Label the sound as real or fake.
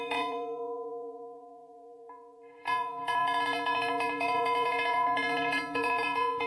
fake